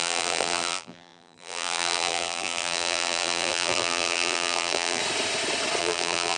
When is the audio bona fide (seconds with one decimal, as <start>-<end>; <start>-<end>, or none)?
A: 5.0-5.8